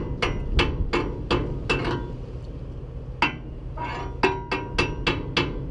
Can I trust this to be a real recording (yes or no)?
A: yes